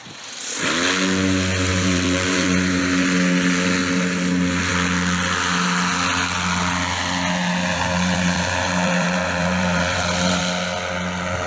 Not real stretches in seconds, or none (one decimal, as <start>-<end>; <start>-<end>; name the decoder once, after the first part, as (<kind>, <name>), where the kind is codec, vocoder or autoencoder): 1.7-2.8 (vocoder, BigVGAN v2); 7.7-10.4